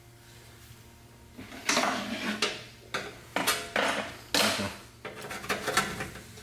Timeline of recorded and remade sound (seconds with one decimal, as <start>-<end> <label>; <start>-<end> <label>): 0.0-6.4 recorded